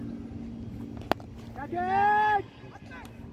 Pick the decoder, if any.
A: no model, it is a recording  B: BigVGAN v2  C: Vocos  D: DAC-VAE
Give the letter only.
A